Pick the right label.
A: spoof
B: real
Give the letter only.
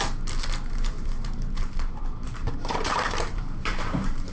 A